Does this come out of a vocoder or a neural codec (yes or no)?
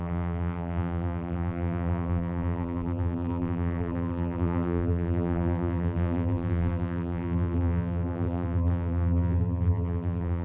yes